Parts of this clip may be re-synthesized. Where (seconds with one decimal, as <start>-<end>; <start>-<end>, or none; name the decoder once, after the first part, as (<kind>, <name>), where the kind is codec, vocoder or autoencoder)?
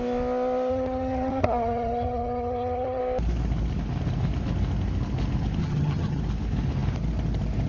0.7-3.0 (vocoder, HiFi-GAN); 5.6-6.2